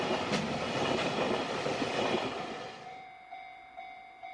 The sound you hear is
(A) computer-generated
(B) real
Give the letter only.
A